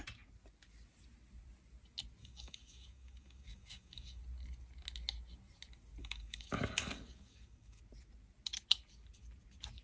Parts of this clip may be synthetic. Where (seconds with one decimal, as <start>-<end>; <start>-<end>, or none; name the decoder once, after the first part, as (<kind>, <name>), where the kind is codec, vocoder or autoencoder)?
2.2-4.2 (codec, DAC); 6.0-7.8